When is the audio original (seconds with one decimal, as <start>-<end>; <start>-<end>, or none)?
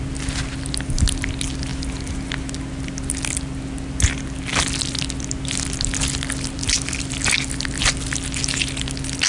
0.0-9.3